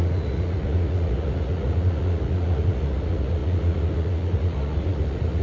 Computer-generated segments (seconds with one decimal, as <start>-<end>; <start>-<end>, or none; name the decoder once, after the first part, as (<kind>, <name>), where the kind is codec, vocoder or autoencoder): 0.0-5.4 (vocoder, Vocos)